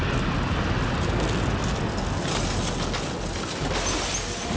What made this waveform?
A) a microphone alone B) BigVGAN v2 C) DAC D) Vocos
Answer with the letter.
A